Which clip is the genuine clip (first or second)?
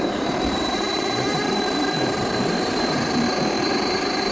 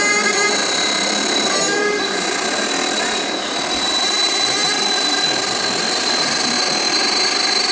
second